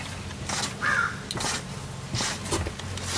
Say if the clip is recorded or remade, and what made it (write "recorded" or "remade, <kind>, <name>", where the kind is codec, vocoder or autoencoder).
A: recorded